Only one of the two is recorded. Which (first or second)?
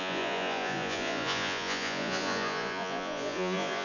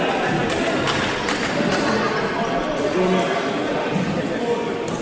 second